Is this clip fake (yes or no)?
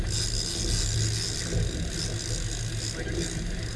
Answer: no